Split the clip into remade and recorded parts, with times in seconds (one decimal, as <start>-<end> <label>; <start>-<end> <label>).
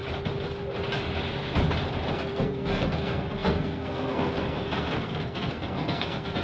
0.0-2.1 recorded; 2.1-6.4 remade